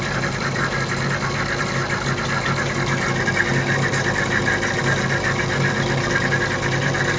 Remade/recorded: recorded